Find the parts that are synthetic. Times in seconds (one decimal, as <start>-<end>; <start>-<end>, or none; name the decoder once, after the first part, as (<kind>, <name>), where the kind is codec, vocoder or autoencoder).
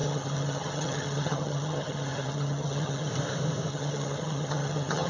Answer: 0.0-3.1 (vocoder, HiFi-GAN); 3.7-5.1